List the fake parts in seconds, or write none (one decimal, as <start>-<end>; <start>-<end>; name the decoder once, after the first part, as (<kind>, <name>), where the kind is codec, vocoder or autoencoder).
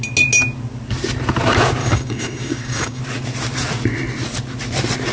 1.8-3.0 (codec, DAC)